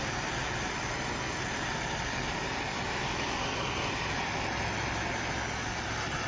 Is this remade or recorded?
recorded